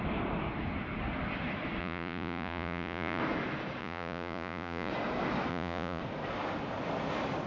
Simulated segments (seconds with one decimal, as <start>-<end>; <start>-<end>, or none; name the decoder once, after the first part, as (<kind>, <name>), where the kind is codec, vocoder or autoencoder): 1.8-3.2 (vocoder, Vocos); 3.8-4.9; 5.5-6.0